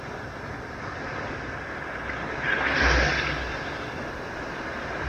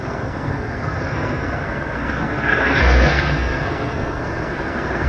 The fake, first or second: second